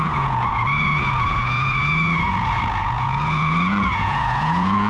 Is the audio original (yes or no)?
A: no